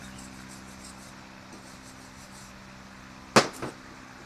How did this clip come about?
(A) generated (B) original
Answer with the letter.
B